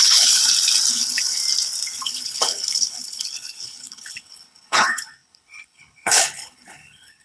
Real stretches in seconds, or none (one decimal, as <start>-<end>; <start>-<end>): 0.4-0.9; 1.4-2.0